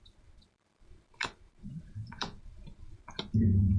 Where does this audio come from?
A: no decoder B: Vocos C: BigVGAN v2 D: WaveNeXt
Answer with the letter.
C